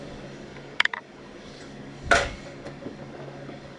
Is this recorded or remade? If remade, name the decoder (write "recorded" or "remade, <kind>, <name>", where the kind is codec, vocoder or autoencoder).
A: remade, codec, DAC